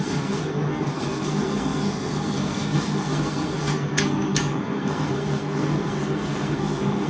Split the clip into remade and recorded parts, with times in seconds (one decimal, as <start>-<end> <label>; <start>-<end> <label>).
0.0-7.1 remade